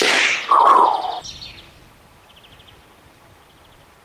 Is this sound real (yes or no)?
yes